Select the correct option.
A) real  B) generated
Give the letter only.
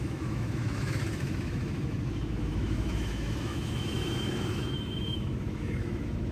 B